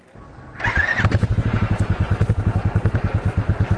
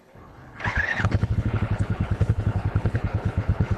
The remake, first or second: second